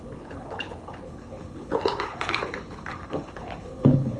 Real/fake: fake